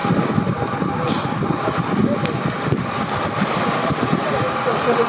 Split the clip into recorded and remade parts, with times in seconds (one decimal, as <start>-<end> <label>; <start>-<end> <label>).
0.0-5.1 recorded